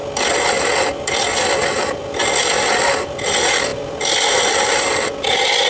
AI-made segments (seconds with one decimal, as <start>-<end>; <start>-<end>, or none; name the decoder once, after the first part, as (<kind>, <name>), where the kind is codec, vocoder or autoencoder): none